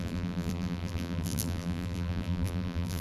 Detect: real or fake fake